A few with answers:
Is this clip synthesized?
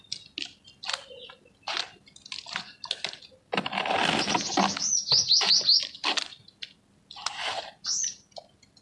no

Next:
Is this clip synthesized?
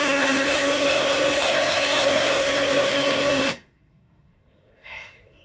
yes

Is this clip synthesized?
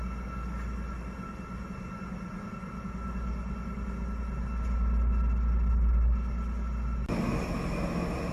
no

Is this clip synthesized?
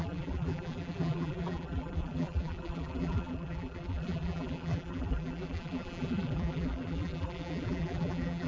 yes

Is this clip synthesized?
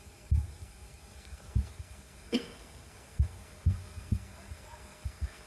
yes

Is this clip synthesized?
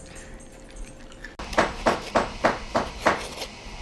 no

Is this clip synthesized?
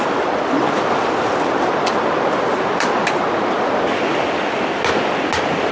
no